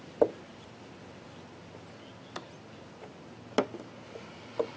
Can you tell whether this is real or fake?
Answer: real